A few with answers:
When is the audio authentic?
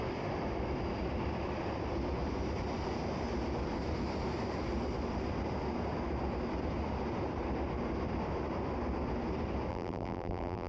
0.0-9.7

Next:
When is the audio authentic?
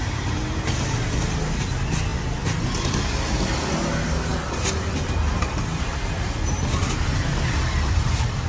0.0-6.8; 7.6-8.5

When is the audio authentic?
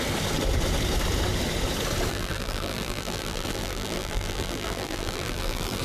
0.0-2.1